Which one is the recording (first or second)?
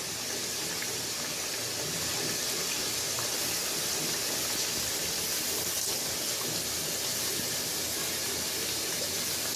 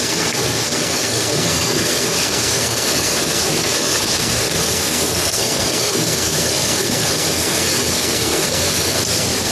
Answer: first